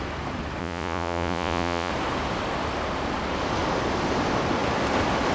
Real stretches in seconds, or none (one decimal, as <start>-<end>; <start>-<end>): 0.0-0.6; 1.9-5.3